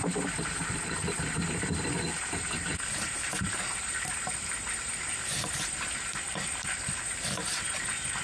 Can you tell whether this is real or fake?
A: real